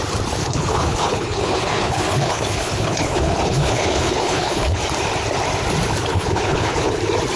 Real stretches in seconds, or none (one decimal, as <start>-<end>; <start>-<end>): 0.0-0.4; 4.8-6.1; 7.0-7.4